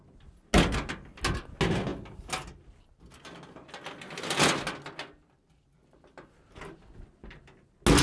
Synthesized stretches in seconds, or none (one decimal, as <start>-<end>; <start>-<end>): none